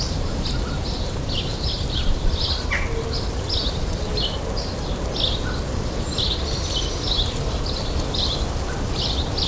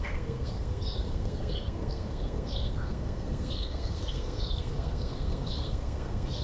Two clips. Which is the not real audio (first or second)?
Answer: second